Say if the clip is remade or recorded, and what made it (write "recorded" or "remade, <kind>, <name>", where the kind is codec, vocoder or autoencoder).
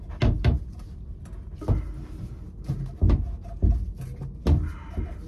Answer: recorded